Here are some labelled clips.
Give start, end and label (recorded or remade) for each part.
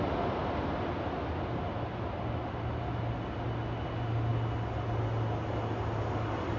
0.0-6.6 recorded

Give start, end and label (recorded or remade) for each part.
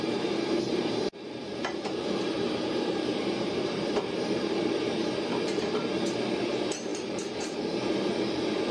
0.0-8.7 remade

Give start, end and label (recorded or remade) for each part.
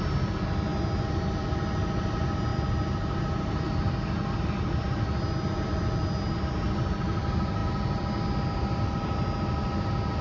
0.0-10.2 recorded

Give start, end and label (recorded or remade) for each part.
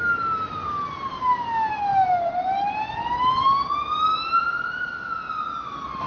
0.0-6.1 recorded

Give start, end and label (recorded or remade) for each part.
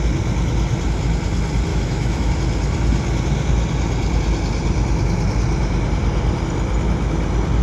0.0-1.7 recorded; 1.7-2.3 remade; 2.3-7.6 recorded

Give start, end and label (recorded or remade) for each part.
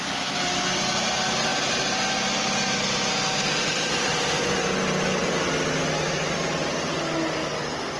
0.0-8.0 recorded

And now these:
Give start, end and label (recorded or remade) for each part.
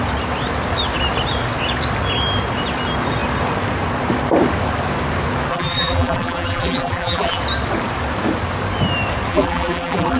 0.0-5.5 recorded; 5.5-7.4 remade; 7.4-9.3 recorded; 9.3-10.2 remade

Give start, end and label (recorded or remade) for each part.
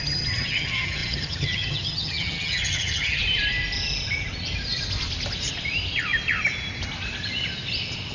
0.0-3.2 remade; 3.2-8.1 recorded